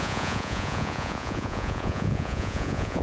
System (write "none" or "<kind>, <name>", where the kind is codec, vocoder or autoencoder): vocoder, Vocos